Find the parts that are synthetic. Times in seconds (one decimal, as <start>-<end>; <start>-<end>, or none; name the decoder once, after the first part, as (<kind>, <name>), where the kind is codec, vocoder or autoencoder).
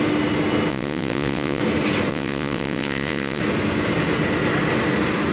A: 0.7-1.6 (vocoder, WaveNeXt); 2.1-3.4